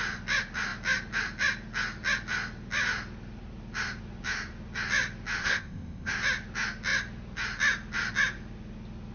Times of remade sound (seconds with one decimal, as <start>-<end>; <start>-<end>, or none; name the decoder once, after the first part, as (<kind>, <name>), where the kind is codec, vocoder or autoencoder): 5.4-6.1 (codec, ZipCodec)